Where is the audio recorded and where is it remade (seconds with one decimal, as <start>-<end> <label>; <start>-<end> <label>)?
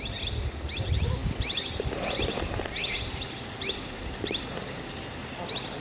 0.0-5.8 recorded